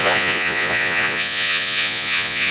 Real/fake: fake